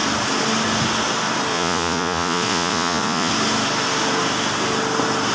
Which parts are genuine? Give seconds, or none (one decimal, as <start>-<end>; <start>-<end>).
0.0-1.5; 3.3-5.3